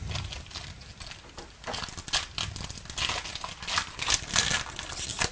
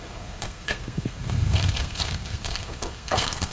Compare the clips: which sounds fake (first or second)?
second